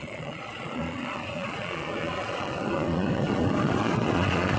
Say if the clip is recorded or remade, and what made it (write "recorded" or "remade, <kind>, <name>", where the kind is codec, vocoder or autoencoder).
remade, vocoder, Vocos